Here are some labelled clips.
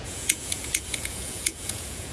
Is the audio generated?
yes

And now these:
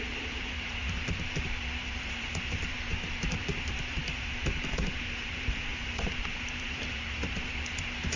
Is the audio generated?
yes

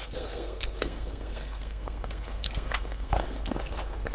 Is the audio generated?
yes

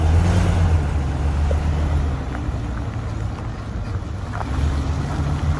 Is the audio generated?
no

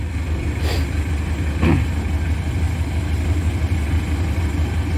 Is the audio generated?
no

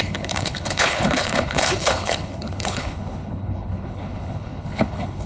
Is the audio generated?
yes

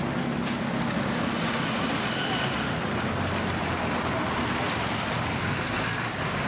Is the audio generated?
no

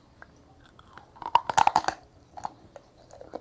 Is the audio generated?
no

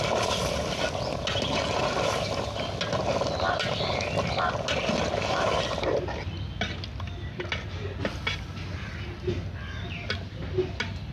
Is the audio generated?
no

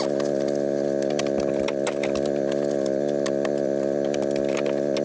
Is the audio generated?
no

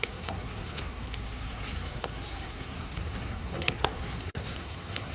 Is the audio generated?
yes